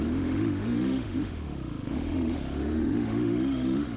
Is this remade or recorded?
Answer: remade